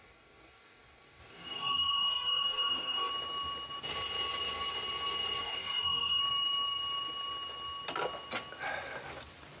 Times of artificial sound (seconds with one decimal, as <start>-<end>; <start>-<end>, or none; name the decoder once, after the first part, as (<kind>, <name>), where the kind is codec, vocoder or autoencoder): 0.0-3.1 (codec, DAC); 5.4-6.2